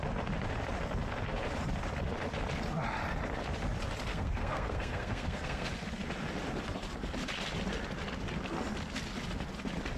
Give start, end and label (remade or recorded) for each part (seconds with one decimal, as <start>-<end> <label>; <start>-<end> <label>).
0.0-4.1 recorded; 4.1-5.7 remade; 5.7-10.0 recorded